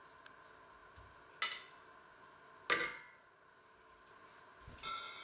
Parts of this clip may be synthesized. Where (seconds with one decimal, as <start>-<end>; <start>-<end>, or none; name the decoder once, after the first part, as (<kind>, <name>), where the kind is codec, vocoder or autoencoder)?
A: none